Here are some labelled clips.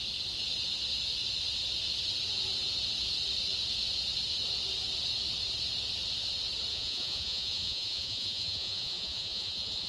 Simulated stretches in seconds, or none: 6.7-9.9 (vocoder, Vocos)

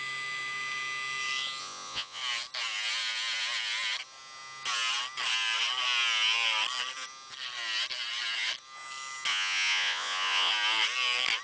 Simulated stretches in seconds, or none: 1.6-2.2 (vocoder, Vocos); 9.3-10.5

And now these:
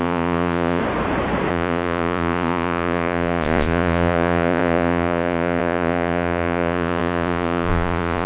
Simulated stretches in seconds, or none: 0.0-0.8 (vocoder, Vocos); 1.5-8.3